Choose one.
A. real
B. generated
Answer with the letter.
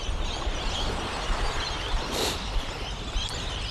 B